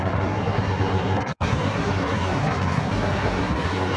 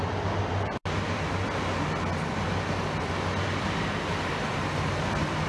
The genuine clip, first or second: second